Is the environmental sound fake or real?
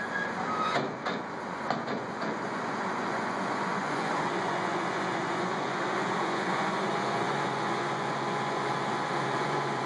fake